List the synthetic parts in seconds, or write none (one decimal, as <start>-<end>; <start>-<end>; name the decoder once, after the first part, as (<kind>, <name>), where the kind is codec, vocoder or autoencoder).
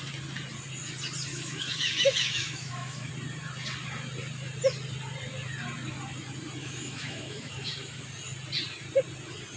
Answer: 1.3-3.1 (autoencoder, DAC-VAE); 6.6-8.1